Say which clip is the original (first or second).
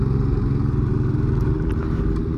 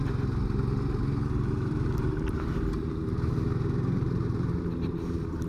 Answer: first